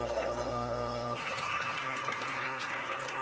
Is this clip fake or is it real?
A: fake